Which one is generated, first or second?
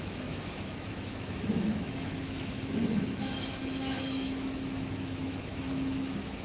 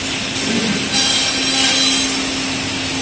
first